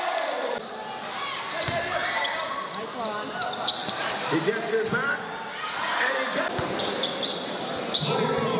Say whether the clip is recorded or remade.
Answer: recorded